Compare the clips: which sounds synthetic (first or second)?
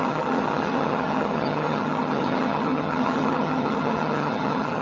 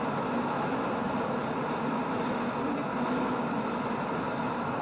first